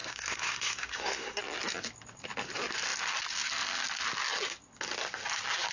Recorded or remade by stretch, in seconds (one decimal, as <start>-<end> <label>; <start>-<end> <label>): 0.0-1.4 remade; 1.4-5.7 recorded